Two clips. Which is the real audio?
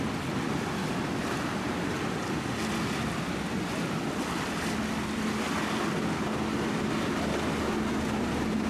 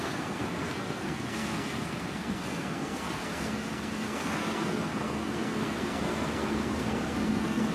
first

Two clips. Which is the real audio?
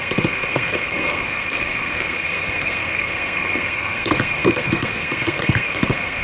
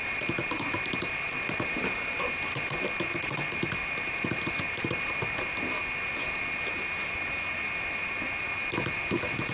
second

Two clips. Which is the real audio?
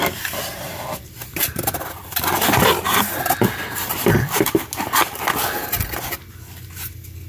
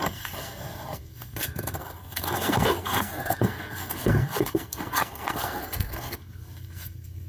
first